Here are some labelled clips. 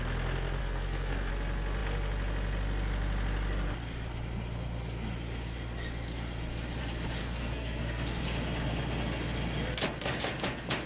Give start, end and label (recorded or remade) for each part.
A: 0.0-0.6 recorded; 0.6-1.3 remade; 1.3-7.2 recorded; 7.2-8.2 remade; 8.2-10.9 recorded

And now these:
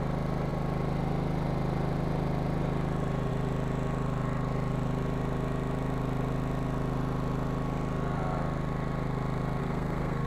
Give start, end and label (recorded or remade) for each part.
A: 0.0-9.6 recorded; 9.6-10.3 remade